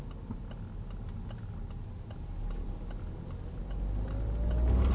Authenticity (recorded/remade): recorded